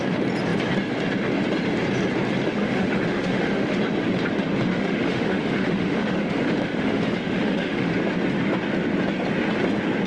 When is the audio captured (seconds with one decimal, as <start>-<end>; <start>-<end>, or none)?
0.0-2.6; 3.8-4.7; 7.9-10.1